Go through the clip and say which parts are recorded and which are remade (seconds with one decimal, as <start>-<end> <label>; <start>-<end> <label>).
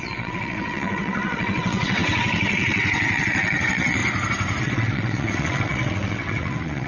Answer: 0.0-4.0 remade; 4.0-4.6 recorded; 4.6-6.9 remade